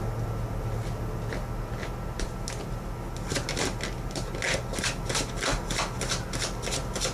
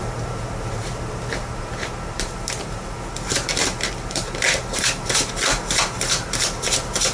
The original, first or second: first